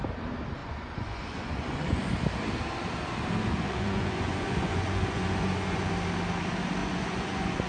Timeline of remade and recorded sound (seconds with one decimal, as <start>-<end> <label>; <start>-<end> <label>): 0.0-0.6 recorded; 0.6-2.1 remade; 2.1-3.5 recorded; 3.5-5.9 remade; 5.9-6.8 recorded; 6.8-7.7 remade